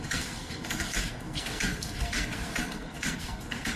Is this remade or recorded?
remade